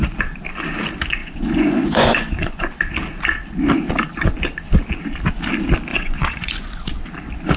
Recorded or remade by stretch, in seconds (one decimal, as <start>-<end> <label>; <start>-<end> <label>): 0.0-1.2 recorded; 1.2-2.9 remade; 2.9-5.9 recorded; 5.9-6.9 remade; 6.9-7.6 recorded

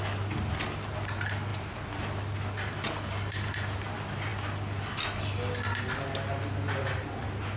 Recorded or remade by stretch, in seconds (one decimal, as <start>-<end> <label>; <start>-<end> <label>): 0.0-7.6 recorded

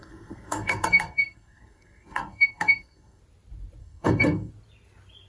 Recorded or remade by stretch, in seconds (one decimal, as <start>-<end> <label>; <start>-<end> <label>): 0.0-3.2 remade; 3.2-3.8 recorded; 3.8-4.5 remade; 4.5-5.3 recorded